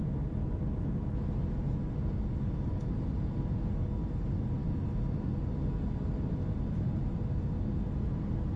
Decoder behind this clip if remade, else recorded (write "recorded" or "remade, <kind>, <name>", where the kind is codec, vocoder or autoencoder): recorded